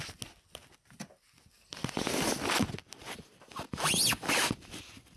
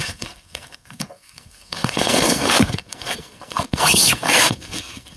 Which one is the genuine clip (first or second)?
first